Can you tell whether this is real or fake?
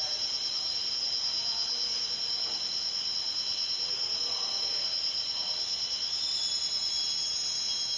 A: real